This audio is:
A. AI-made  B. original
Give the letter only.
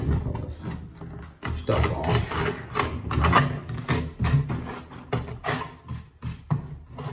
B